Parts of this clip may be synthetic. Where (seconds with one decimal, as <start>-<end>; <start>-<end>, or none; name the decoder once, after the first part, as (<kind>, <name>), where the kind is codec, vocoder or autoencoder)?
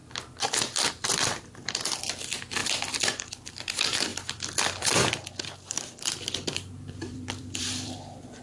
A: 0.9-8.4 (vocoder, BigVGAN v2)